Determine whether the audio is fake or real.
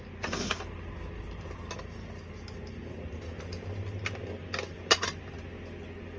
real